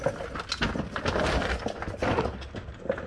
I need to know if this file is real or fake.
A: real